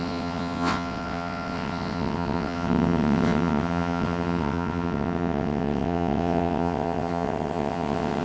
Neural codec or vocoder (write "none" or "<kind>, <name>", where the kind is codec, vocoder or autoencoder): vocoder, WaveNeXt